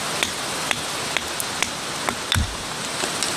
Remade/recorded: recorded